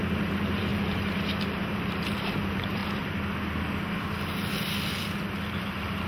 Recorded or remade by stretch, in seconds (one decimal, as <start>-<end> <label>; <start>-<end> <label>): 0.0-2.8 remade; 2.8-5.5 recorded; 5.5-6.1 remade